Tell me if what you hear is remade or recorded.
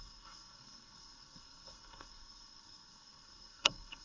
remade